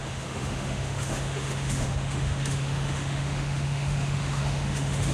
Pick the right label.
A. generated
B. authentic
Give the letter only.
A